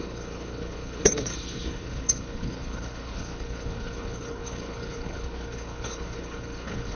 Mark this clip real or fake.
fake